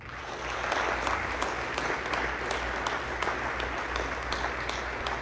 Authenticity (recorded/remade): recorded